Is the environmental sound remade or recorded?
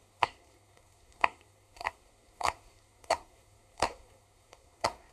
remade